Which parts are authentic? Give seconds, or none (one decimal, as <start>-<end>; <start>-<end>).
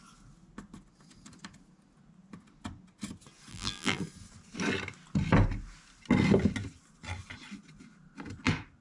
0.0-3.5; 4.0-8.8